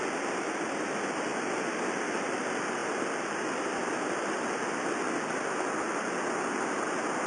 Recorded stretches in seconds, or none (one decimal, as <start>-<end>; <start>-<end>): 0.0-7.3